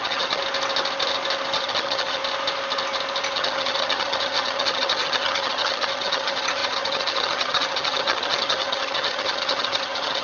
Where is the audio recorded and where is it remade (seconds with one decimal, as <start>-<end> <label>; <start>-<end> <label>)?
0.0-0.4 remade; 0.4-1.6 recorded; 1.6-2.2 remade; 2.2-3.3 recorded; 3.3-10.2 remade